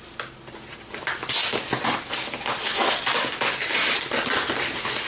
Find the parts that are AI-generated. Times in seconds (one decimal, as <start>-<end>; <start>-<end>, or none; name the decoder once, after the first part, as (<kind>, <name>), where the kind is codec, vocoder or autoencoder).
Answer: none